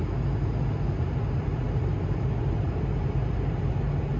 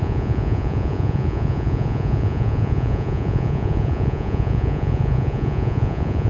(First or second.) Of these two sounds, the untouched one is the first